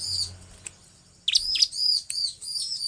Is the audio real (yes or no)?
yes